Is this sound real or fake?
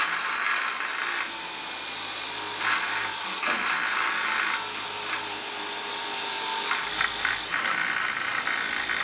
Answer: real